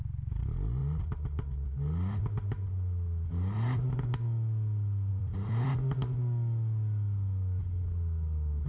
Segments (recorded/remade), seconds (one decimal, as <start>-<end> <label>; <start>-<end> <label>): 0.0-5.1 recorded; 5.1-5.7 remade; 5.7-8.7 recorded